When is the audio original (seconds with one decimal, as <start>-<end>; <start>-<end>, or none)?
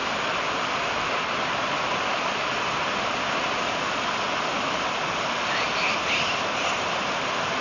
0.0-7.6